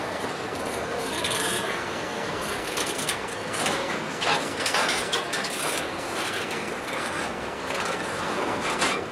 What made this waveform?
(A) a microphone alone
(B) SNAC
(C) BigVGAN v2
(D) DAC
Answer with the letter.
B